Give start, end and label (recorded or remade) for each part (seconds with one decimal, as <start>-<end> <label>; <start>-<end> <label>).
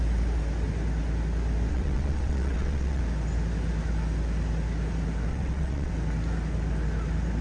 0.0-1.7 recorded; 1.7-3.0 remade; 3.0-5.3 recorded; 5.3-5.9 remade; 5.9-7.4 recorded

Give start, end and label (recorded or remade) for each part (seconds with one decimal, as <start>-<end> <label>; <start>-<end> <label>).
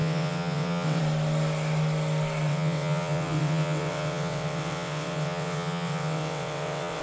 0.0-1.0 remade; 1.0-2.5 recorded; 2.5-7.0 remade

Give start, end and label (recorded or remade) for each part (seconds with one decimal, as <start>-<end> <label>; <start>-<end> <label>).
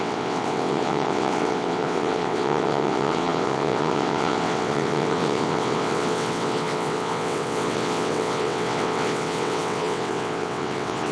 0.0-11.1 remade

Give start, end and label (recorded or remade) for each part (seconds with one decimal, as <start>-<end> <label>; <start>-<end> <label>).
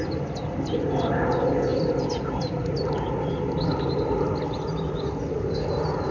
0.0-6.1 recorded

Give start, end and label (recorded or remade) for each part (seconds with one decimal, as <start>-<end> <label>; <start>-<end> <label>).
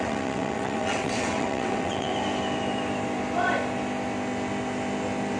0.0-2.1 remade; 2.1-5.4 recorded